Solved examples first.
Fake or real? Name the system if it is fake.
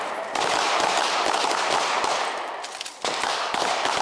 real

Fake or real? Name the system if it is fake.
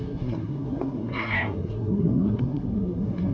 fake, codec, SNAC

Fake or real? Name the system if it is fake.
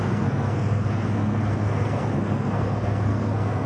fake, codec, SNAC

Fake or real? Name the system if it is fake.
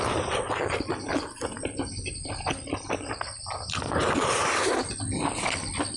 real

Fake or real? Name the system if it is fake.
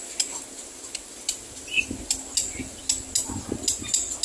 real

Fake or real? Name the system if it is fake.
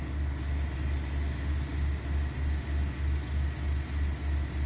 real